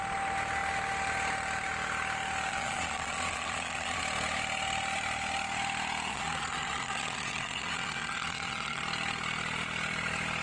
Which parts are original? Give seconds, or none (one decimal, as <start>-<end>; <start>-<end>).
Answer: 0.0-2.5; 4.0-6.1; 8.8-10.4